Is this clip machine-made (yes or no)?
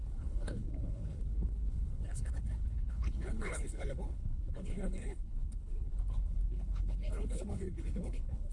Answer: yes